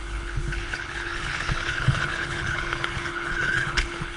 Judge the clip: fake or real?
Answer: fake